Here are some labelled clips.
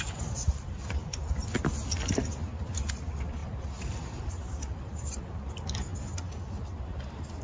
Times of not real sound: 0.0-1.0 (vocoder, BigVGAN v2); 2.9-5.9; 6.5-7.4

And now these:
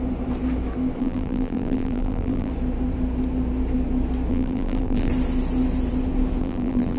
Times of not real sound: 1.0-2.5 (vocoder, BigVGAN v2); 4.3-5.1; 6.4-7.0